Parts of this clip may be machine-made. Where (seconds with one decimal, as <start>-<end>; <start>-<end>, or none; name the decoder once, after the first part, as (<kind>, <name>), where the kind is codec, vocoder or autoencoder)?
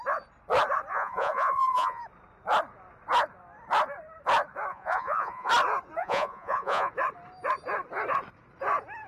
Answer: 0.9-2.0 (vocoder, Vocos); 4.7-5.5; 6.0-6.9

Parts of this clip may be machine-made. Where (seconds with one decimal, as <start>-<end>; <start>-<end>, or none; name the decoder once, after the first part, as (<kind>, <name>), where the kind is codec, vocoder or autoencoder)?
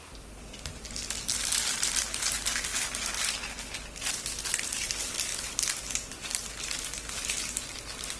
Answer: none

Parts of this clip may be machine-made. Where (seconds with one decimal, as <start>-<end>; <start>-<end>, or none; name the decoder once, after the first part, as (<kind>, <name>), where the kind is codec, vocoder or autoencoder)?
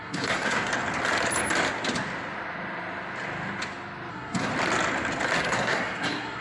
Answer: 0.0-0.7 (codec, SNAC); 4.1-4.5; 5.4-6.4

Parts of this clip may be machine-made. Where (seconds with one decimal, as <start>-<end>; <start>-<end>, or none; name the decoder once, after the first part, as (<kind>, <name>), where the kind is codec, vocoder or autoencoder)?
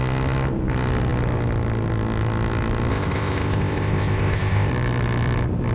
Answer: 2.9-4.7 (codec, ZipCodec)